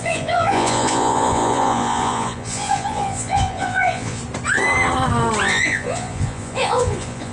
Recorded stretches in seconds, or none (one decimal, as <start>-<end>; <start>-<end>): 4.2-5.4